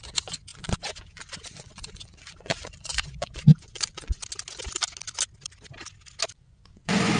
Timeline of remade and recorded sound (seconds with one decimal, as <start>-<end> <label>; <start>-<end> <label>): 0.0-4.2 remade; 4.2-6.4 recorded; 6.4-7.2 remade